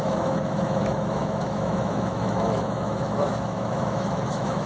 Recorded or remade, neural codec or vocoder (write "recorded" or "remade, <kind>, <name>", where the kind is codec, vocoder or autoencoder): remade, autoencoder, DAC-VAE